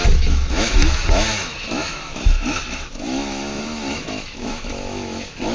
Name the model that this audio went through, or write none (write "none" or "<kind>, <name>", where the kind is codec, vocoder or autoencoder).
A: autoencoder, DAC-VAE